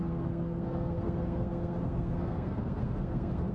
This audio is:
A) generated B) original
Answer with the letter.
A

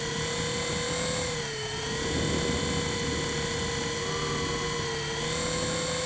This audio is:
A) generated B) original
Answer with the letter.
B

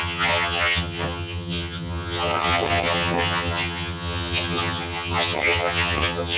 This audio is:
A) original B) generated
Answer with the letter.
B